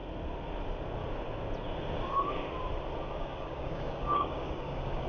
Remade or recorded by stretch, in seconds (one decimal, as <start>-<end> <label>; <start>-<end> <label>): 0.0-3.1 recorded; 3.1-5.1 remade